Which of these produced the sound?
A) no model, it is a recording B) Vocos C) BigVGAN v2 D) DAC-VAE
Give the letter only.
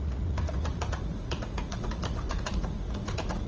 B